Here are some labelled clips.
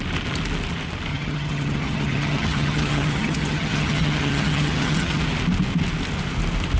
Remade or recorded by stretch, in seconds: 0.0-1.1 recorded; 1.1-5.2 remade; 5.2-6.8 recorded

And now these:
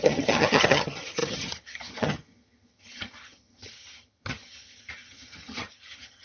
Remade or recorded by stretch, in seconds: 0.0-6.2 remade

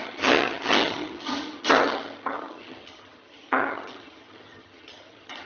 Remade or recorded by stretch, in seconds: 0.0-5.5 remade